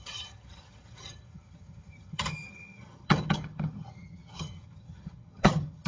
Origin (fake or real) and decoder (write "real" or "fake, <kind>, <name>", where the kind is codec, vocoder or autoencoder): fake, vocoder, HiFi-GAN